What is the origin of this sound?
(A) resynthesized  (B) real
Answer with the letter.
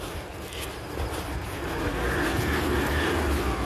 B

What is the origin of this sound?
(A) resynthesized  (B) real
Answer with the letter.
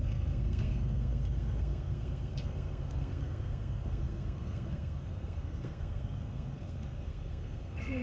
A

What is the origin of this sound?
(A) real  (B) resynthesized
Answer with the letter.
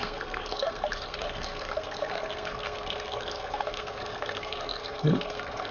B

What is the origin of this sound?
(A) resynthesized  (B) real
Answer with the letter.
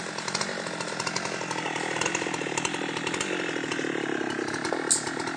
B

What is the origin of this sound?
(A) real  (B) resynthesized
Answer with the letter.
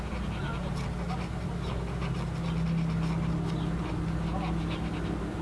A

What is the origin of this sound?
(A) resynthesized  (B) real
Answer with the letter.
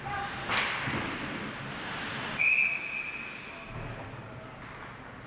B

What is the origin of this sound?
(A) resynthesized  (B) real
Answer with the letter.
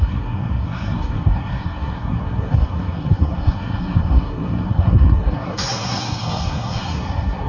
A